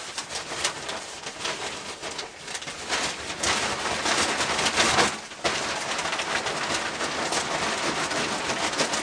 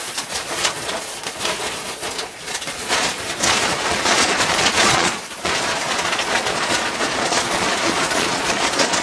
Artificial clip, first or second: second